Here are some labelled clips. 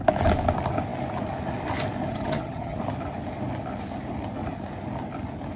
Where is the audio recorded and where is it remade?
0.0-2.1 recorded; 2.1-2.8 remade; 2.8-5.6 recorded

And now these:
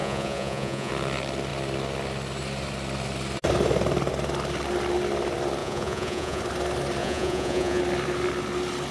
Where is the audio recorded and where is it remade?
0.0-0.9 remade; 0.9-5.6 recorded; 5.6-6.4 remade; 6.4-7.0 recorded; 7.0-7.8 remade; 7.8-8.9 recorded

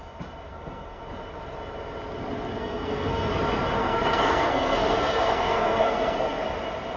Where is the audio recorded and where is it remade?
0.0-0.5 recorded; 0.5-1.0 remade; 1.0-2.6 recorded; 2.6-3.3 remade; 3.3-3.8 recorded; 3.8-6.4 remade; 6.4-7.0 recorded